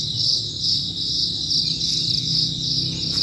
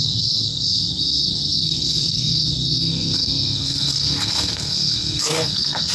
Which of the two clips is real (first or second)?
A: first